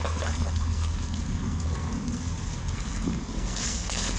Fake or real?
fake